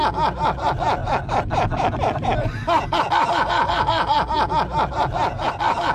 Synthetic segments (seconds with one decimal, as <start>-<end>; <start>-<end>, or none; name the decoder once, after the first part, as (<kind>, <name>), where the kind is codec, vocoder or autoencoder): 1.0-4.5 (vocoder, BigVGAN v2)